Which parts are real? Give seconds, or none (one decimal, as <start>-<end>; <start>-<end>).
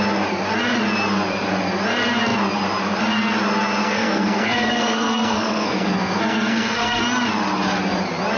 0.0-3.8; 7.0-8.4